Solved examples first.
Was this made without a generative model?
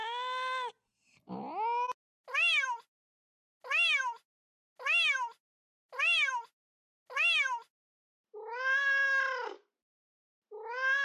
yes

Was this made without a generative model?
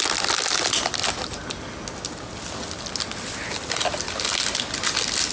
yes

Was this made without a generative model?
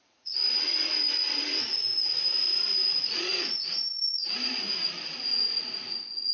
no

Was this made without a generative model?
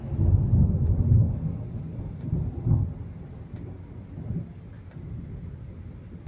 yes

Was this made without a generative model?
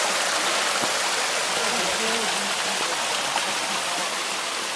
yes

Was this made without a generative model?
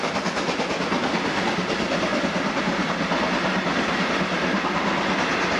yes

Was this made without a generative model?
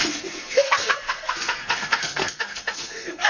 no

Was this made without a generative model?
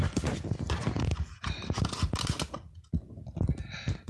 yes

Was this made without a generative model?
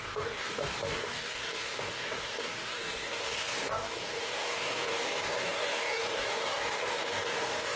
no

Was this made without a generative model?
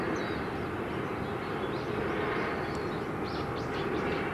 yes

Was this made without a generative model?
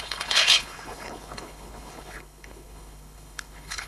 no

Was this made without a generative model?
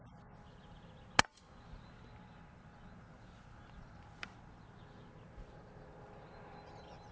yes